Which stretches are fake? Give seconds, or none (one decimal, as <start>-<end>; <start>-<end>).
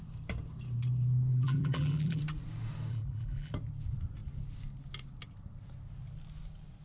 1.3-2.2; 2.9-3.5